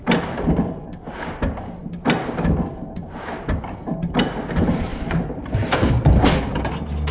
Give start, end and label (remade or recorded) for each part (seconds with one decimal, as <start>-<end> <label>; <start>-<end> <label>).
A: 0.0-7.1 recorded